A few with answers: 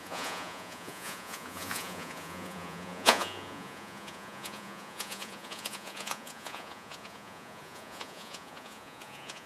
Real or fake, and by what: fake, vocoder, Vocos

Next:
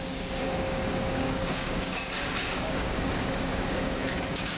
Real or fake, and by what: fake, codec, DAC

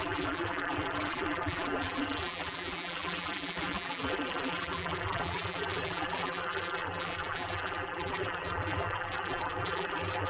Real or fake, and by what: fake, vocoder, BigVGAN v2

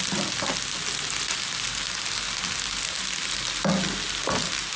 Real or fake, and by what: real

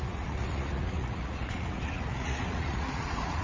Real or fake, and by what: fake, vocoder, Vocos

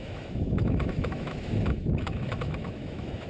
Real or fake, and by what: fake, autoencoder, DAC-VAE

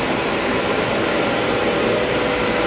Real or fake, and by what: real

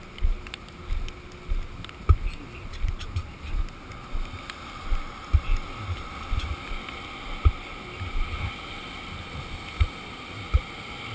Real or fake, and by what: real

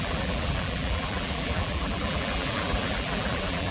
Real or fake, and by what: fake, vocoder, BigVGAN v2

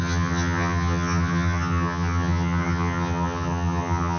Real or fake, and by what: fake, vocoder, HiFi-GAN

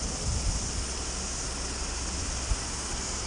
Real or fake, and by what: real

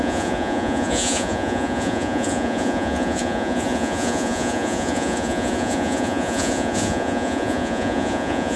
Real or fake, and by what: fake, vocoder, Vocos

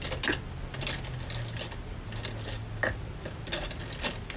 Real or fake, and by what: real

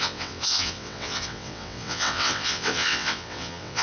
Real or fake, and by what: fake, vocoder, WaveNeXt